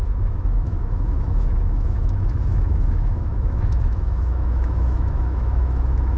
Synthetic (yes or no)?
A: yes